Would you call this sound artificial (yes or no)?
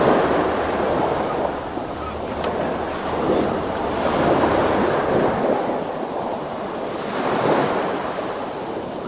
no